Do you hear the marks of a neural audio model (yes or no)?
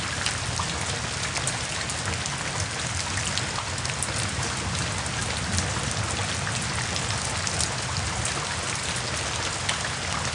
no